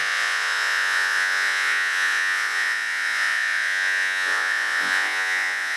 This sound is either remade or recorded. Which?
remade